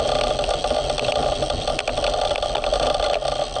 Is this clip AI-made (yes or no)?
no